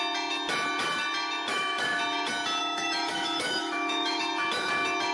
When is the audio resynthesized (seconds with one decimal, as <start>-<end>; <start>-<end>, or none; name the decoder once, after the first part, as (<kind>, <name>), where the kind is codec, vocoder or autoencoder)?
1.5-2.0 (autoencoder, DAC-VAE); 2.6-4.2